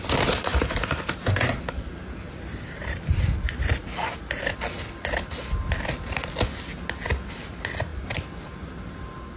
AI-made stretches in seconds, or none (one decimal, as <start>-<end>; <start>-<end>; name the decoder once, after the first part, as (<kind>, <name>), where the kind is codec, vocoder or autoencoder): 0.5-1.6 (vocoder, BigVGAN v2); 2.5-3.6